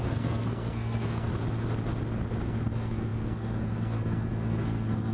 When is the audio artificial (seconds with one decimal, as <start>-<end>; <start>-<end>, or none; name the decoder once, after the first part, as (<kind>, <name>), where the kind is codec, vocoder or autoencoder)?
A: 0.0-1.3 (codec, SNAC); 2.4-5.1

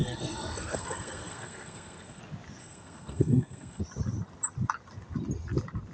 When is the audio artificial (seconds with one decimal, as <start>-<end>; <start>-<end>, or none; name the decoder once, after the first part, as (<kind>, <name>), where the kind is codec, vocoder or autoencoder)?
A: 0.0-2.2 (codec, SNAC); 2.6-3.8

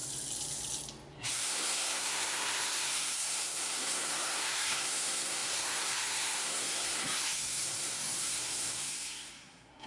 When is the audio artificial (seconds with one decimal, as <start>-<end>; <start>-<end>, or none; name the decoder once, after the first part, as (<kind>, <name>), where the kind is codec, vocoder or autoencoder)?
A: 1.3-9.9 (codec, SNAC)

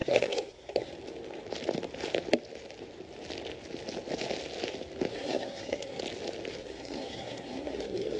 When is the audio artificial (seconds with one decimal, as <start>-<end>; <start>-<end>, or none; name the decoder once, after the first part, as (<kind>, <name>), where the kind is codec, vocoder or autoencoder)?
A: 0.0-0.9 (codec, SNAC); 5.1-6.0; 6.5-8.2

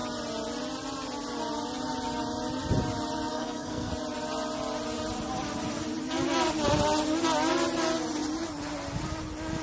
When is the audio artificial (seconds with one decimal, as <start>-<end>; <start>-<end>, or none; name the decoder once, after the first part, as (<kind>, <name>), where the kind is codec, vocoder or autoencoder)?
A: 3.3-3.9 (codec, SNAC)

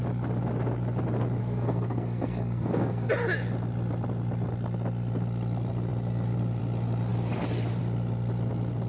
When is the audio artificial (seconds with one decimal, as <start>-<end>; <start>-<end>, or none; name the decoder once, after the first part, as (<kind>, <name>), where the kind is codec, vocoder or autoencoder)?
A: 1.4-3.1 (codec, SNAC)